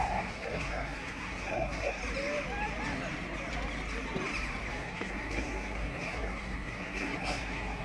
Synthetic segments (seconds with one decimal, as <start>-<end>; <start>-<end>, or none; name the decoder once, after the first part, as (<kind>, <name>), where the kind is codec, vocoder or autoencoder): 0.0-2.0 (codec, SNAC); 4.7-7.8